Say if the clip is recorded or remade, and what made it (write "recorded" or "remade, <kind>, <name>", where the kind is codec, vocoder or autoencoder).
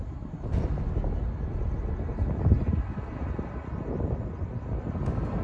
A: recorded